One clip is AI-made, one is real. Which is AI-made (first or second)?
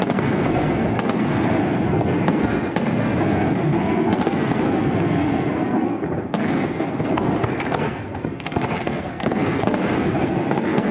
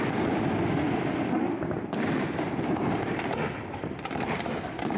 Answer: first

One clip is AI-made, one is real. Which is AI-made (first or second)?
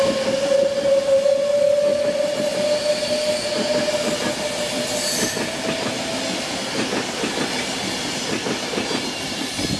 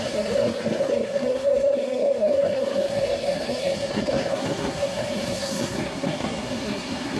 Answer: second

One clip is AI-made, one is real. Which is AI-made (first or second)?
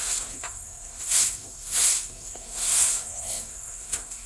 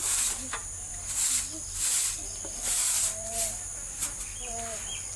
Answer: first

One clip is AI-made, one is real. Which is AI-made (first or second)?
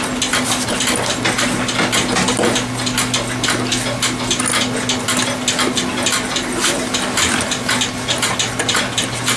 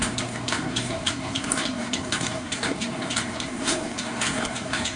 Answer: second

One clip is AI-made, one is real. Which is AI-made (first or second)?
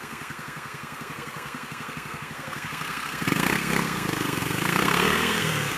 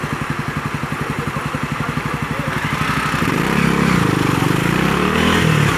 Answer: first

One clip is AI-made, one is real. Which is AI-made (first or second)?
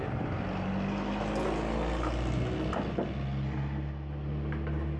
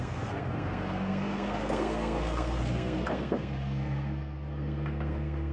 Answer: second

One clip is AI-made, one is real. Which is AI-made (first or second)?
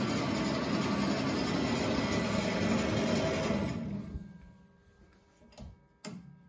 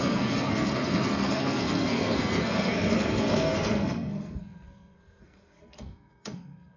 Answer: second